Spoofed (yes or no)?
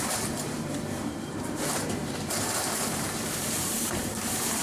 yes